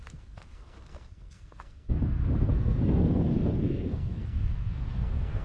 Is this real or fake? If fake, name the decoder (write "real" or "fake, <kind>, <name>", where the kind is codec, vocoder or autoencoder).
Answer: fake, codec, SNAC